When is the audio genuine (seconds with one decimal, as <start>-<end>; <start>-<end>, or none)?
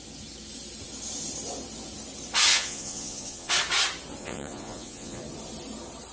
0.0-2.5; 3.5-4.2; 5.2-6.1